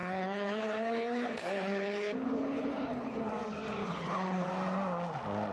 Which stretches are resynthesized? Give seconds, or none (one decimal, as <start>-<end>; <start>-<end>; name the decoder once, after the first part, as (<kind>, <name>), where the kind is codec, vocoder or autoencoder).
0.0-3.3 (codec, HILCodec); 3.8-4.5